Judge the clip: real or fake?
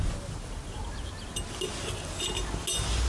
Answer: real